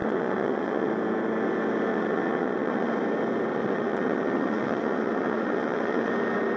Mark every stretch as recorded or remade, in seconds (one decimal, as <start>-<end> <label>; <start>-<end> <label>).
0.0-0.9 remade; 0.9-1.9 recorded; 1.9-2.9 remade; 2.9-3.5 recorded; 3.5-6.1 remade; 6.1-6.6 recorded